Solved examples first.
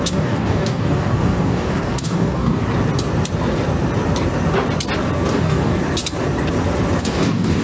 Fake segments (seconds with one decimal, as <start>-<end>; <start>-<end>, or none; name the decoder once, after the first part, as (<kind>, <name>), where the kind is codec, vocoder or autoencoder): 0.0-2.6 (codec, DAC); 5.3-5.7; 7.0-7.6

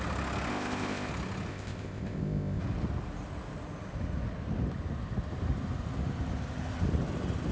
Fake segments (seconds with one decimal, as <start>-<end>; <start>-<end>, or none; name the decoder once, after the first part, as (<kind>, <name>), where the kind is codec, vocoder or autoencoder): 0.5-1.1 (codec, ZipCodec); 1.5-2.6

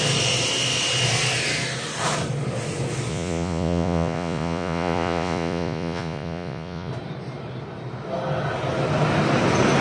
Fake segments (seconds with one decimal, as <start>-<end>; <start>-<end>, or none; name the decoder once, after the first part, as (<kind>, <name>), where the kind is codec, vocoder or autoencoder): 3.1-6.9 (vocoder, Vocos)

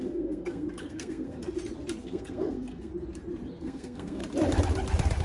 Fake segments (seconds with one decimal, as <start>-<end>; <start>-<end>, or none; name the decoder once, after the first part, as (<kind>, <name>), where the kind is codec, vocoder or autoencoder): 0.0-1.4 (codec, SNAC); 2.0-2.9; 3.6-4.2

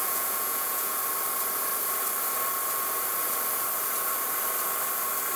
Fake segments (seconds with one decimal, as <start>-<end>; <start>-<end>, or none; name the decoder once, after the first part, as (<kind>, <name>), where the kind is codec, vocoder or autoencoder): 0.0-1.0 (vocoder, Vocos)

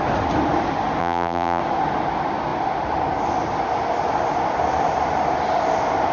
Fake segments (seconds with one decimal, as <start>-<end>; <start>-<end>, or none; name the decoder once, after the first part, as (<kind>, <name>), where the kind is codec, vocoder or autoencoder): 1.0-1.6 (vocoder, BigVGAN v2)